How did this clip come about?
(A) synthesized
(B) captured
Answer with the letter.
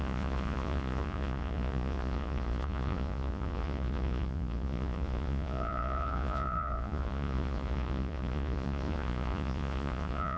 A